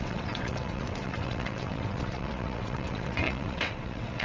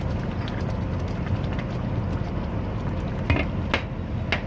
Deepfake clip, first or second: first